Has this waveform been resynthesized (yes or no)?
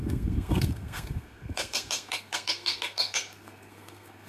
yes